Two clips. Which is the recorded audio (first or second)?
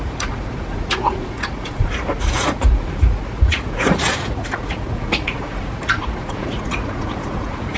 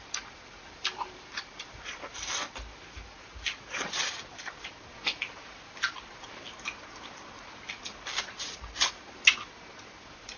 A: second